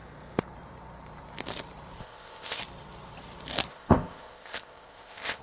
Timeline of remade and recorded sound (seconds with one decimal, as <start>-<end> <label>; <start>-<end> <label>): 0.0-2.0 recorded; 2.0-2.6 remade; 2.6-3.7 recorded; 3.7-5.4 remade